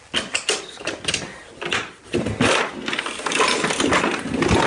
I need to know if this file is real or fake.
real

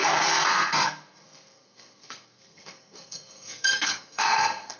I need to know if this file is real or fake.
fake